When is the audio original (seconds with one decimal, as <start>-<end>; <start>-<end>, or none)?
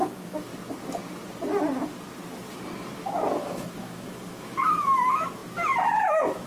0.5-3.4; 5.4-6.0